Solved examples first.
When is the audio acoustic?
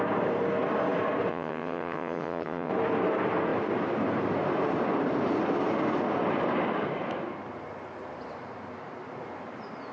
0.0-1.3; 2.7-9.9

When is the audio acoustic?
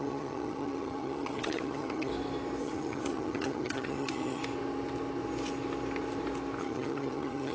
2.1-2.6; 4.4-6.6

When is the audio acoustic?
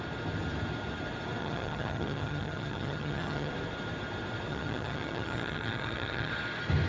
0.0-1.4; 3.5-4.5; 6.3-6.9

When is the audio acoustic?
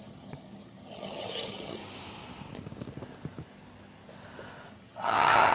1.8-4.7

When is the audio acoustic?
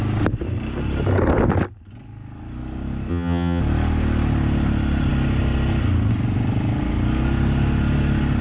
0.0-3.1; 3.6-8.4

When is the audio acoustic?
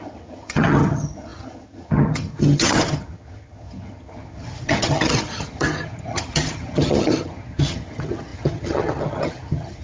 none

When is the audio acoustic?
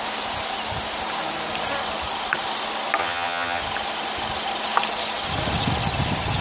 0.0-3.0; 3.6-6.4